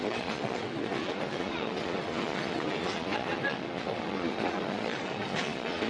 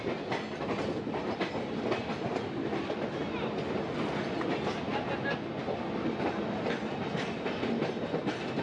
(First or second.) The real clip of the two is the second